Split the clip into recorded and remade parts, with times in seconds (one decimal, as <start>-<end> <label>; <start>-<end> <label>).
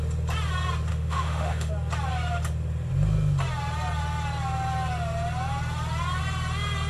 0.0-0.9 recorded; 0.9-1.7 remade; 1.7-6.9 recorded